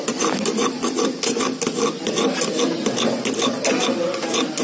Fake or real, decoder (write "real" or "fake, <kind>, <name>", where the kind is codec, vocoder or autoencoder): real